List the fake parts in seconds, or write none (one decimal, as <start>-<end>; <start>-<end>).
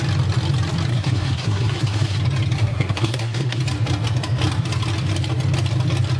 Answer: 0.9-2.2; 2.6-3.6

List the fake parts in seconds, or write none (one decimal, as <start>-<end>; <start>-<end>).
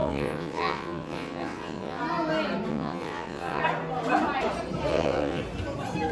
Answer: 0.0-2.0; 2.7-3.6; 4.9-5.4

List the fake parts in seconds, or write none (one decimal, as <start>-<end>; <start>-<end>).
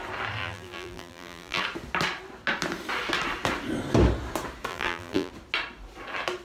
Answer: 0.4-1.6; 4.7-5.3